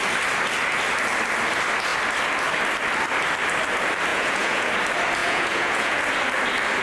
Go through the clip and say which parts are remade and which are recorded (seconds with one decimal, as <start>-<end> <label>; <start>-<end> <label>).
0.0-4.1 recorded; 4.1-4.7 remade; 4.7-5.2 recorded; 5.2-6.0 remade; 6.0-6.8 recorded